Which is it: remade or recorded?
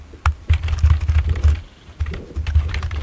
recorded